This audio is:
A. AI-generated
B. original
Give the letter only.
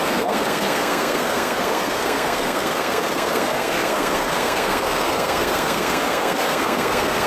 A